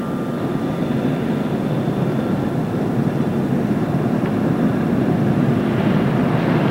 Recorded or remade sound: recorded